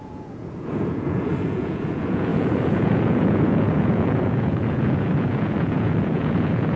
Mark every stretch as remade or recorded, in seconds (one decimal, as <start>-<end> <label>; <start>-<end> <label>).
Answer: 0.0-6.8 remade